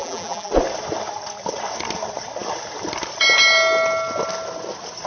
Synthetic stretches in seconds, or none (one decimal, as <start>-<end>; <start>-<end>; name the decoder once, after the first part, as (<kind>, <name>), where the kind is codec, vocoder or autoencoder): 0.0-0.5 (vocoder, BigVGAN v2)